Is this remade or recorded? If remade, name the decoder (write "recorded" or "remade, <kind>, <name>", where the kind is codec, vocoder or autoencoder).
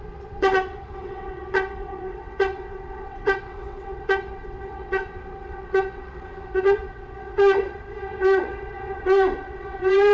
remade, vocoder, WaveNeXt